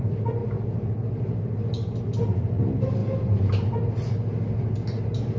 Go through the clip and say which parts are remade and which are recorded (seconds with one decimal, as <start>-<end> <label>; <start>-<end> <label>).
0.0-5.4 recorded